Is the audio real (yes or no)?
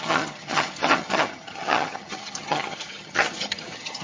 no